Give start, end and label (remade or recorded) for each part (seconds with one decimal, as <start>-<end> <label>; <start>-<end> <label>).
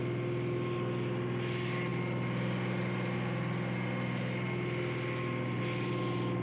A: 0.0-6.4 recorded